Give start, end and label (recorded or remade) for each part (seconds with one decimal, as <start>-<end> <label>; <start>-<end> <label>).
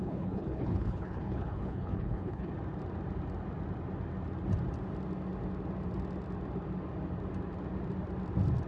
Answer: 0.0-2.5 remade; 2.5-8.7 recorded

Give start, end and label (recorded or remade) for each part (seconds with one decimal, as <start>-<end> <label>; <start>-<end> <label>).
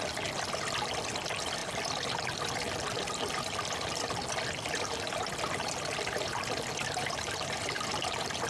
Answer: 0.0-8.5 recorded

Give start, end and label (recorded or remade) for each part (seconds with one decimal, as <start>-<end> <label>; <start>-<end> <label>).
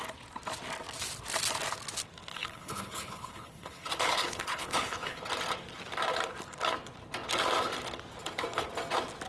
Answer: 0.0-2.3 recorded; 2.3-5.2 remade; 5.2-9.3 recorded